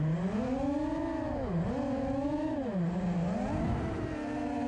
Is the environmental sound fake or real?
real